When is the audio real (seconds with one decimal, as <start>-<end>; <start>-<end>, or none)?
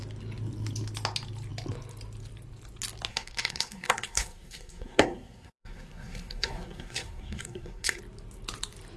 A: 0.0-3.1; 8.0-9.0